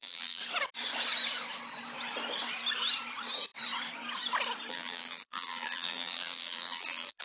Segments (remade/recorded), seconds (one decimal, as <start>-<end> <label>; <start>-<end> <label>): 0.0-0.4 remade; 0.4-4.7 recorded; 4.7-7.2 remade